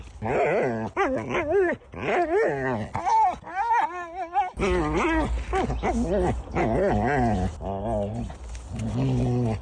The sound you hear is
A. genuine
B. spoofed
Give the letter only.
A